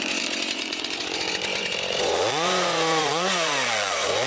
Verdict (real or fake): fake